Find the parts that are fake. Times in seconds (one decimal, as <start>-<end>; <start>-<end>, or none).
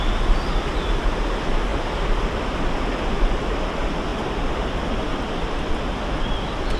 none